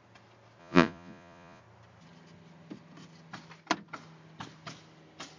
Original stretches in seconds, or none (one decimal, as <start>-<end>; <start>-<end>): 0.0-0.6; 1.6-5.4